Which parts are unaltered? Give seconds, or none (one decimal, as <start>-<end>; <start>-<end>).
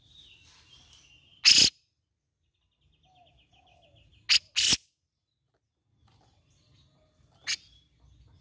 0.0-8.4